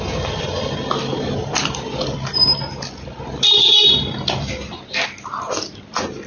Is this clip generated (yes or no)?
no